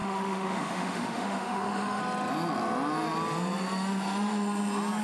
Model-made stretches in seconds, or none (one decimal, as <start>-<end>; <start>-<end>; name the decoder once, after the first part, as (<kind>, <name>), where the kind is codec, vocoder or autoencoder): 0.0-2.0 (autoencoder, DAC-VAE)